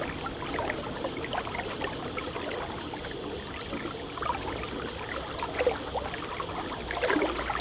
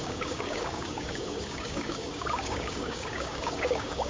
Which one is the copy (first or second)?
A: second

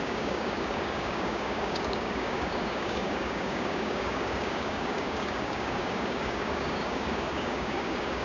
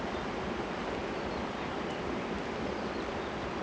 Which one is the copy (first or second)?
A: first